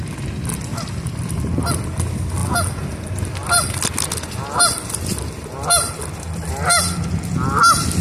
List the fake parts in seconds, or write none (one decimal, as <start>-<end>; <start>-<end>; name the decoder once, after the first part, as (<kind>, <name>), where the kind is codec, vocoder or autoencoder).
none